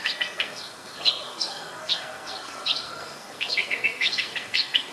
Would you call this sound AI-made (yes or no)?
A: yes